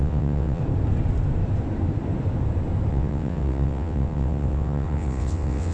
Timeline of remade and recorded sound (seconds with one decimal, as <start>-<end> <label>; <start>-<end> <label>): 0.0-0.6 remade; 0.6-2.9 recorded; 2.9-5.7 remade